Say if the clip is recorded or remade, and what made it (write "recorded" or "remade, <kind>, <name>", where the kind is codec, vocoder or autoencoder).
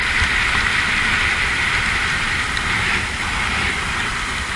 remade, vocoder, BigVGAN v2